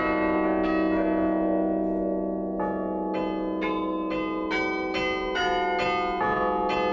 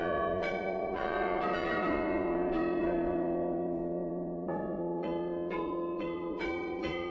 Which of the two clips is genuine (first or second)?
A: first